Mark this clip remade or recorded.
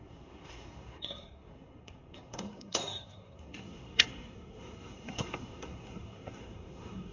remade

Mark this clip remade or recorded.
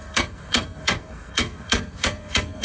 remade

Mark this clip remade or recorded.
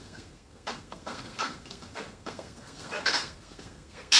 remade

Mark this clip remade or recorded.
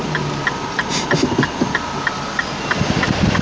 recorded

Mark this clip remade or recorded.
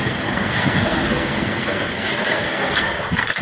remade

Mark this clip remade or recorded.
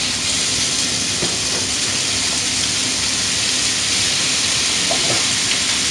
recorded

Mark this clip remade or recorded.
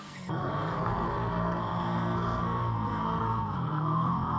remade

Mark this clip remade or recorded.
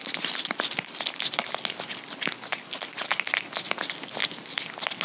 recorded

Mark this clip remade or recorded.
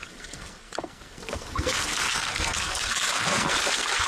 remade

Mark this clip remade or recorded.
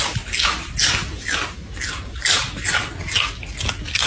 recorded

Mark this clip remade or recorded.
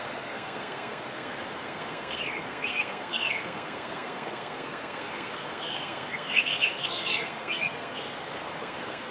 remade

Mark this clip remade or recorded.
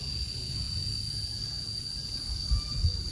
recorded